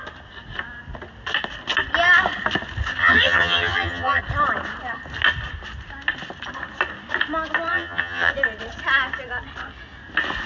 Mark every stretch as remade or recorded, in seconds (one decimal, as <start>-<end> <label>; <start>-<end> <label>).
0.0-3.0 recorded; 3.0-4.2 remade; 4.2-7.7 recorded; 7.7-8.3 remade; 8.3-10.5 recorded